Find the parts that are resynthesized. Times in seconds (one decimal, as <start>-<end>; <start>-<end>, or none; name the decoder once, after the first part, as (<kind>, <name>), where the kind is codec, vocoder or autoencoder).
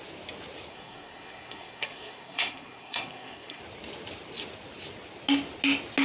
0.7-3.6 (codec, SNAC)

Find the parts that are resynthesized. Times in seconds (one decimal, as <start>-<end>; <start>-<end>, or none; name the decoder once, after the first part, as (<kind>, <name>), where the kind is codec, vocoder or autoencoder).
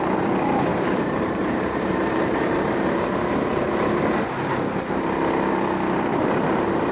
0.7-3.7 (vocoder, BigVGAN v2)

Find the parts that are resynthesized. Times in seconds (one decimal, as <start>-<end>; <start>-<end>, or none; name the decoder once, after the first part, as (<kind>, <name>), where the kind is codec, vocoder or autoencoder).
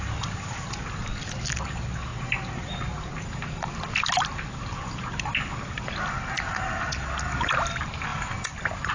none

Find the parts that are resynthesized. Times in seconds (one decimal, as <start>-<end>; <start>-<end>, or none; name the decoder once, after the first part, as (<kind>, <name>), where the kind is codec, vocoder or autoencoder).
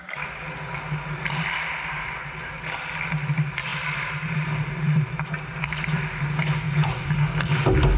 3.7-5.3 (vocoder, BigVGAN v2)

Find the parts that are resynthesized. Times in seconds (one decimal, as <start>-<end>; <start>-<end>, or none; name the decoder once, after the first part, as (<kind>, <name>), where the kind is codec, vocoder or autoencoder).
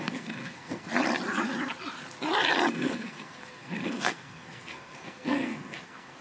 0.0-0.9 (codec, SNAC); 2.7-6.2